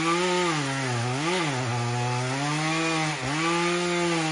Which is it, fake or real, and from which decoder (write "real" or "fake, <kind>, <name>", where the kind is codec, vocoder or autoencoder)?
real